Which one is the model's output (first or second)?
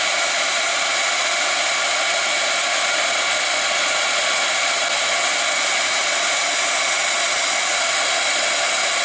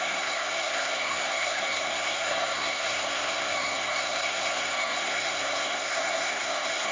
second